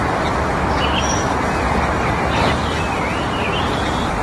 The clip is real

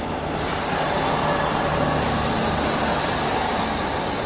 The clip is real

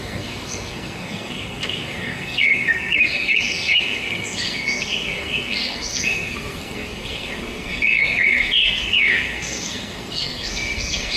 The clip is fake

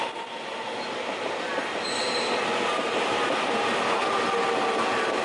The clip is real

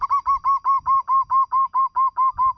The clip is real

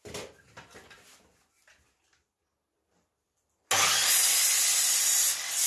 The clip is real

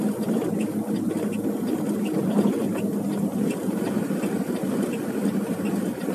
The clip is real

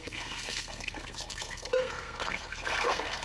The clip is fake